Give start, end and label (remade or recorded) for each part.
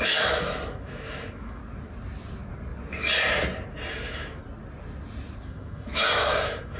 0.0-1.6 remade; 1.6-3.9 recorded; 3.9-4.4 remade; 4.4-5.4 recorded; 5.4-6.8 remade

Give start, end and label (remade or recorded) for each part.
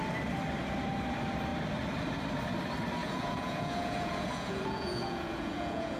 0.0-3.0 recorded; 3.0-6.0 remade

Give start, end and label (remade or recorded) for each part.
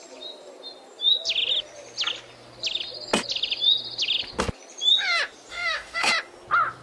0.0-5.5 recorded; 5.5-6.1 remade; 6.1-6.8 recorded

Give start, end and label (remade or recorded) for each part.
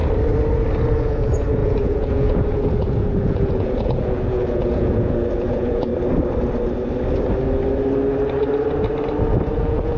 0.0-1.0 recorded; 1.0-5.9 remade; 5.9-9.5 recorded; 9.5-10.0 remade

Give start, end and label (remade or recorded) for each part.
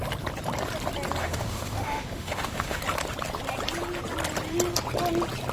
0.0-1.2 recorded; 1.2-2.8 remade; 2.8-5.5 recorded